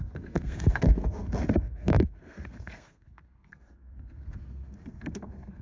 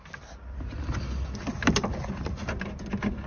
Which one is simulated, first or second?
first